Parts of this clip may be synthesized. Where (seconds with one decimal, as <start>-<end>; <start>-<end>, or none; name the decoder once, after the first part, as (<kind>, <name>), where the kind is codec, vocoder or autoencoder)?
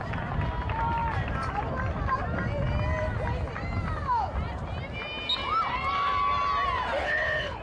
7.0-7.6 (codec, HILCodec)